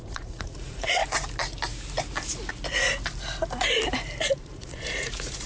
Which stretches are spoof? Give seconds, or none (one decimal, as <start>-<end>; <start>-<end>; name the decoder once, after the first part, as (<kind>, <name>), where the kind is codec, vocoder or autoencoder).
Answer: 0.0-1.0 (vocoder, Vocos); 4.3-5.5